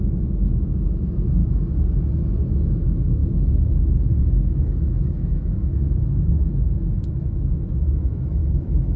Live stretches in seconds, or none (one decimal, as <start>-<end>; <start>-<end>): 1.4-2.7; 3.2-4.3